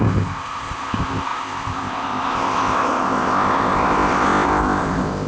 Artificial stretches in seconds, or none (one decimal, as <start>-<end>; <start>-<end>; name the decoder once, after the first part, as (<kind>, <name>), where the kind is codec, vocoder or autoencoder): 0.0-5.3 (codec, ZipCodec)

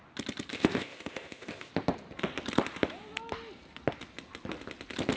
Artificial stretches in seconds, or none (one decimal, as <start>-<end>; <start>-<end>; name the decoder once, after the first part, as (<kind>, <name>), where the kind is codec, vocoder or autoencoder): 0.5-1.7 (codec, ZipCodec)

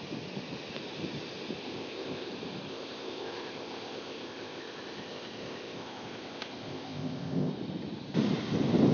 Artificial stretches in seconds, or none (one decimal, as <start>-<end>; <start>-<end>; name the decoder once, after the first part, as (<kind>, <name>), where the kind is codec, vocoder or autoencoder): 1.6-2.3 (codec, ZipCodec); 2.7-7.5

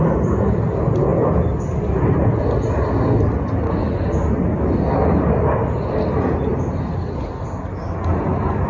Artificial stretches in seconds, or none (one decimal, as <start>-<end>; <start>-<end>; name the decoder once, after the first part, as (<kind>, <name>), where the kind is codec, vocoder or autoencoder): none

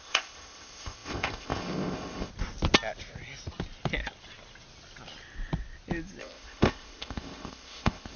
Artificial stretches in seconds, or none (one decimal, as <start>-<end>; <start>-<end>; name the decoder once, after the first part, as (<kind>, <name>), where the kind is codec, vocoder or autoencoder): 0.0-2.3 (codec, ZipCodec); 6.2-8.2

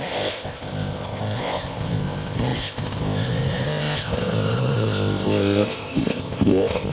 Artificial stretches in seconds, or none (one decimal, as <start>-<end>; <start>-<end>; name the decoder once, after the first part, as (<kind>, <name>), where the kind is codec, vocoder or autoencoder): 0.0-6.9 (codec, ZipCodec)

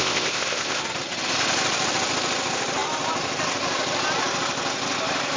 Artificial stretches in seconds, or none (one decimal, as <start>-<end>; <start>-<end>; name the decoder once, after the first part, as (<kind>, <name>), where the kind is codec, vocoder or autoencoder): 0.0-0.8 (codec, ZipCodec)